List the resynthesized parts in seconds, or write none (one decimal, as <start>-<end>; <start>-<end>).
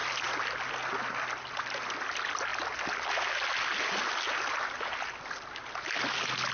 none